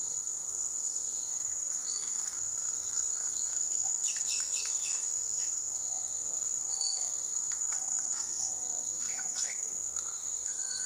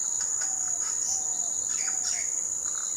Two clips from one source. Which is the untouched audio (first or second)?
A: second